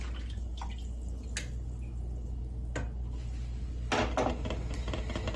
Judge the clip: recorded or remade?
recorded